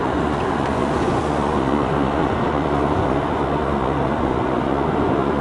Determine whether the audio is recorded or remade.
remade